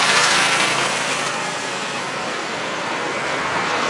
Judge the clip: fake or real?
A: fake